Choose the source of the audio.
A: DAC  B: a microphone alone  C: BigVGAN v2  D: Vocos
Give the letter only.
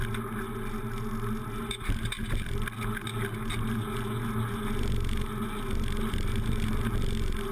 B